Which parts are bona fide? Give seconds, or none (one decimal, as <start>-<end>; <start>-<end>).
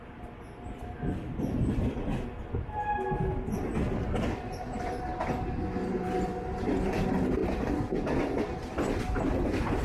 0.0-9.8